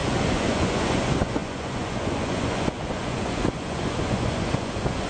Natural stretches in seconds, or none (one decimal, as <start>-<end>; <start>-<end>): none